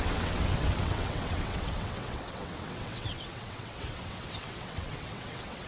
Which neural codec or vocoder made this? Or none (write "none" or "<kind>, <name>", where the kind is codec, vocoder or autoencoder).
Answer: vocoder, WaveNeXt